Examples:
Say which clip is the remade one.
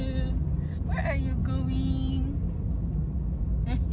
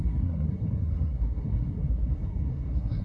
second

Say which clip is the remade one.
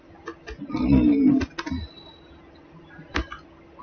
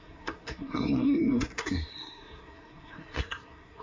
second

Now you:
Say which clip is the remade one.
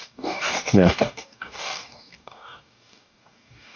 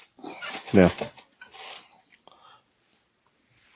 first